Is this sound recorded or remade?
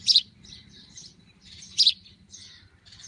remade